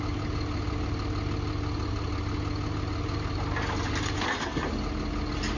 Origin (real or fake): real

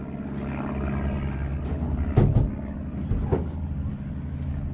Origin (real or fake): real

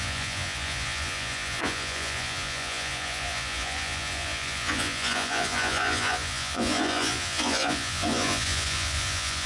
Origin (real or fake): fake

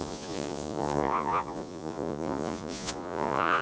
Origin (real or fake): fake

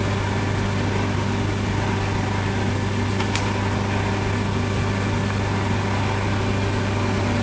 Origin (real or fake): real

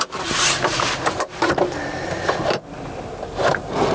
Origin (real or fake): real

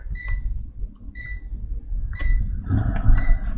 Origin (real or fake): real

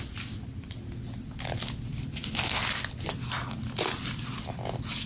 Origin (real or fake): real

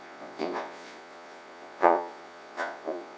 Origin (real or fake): fake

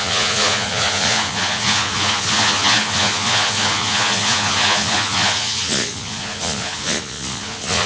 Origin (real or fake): fake